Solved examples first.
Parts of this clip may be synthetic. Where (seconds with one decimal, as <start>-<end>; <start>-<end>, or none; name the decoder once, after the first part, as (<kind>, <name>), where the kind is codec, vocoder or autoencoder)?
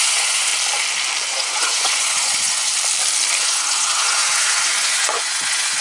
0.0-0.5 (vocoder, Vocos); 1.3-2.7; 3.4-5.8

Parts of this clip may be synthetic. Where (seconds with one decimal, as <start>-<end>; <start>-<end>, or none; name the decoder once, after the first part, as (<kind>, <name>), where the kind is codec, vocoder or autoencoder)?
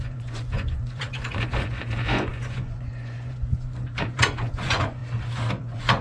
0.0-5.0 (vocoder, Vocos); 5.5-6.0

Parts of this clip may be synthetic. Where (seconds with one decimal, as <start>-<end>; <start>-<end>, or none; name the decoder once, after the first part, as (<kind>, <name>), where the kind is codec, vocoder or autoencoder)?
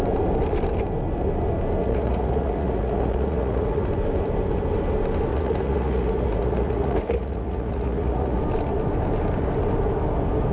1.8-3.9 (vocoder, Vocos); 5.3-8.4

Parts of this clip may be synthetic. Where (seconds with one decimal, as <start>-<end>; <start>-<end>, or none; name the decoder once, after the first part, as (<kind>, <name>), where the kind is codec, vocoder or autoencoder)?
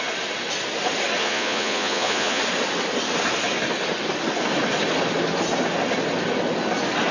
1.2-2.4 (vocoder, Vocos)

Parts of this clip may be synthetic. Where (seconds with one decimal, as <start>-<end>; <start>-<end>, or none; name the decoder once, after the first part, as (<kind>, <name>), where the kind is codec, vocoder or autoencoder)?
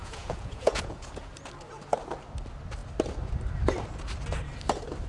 0.0-1.2 (vocoder, Vocos)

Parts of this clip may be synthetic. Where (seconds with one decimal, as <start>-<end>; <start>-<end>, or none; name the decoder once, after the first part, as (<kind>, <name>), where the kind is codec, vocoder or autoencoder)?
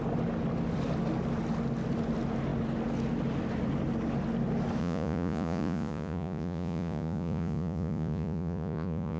4.8-9.2 (vocoder, Vocos)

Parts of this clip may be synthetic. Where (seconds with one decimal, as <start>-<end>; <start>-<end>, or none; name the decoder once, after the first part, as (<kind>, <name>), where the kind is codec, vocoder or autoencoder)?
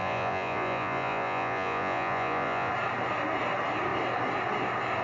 0.0-2.7 (vocoder, Vocos)